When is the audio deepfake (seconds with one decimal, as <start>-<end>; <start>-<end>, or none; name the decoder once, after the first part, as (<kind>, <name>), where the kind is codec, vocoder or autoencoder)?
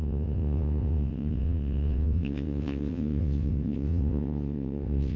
0.0-5.2 (vocoder, WaveNeXt)